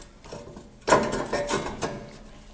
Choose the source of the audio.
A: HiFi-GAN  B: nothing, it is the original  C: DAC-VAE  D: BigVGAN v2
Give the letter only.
B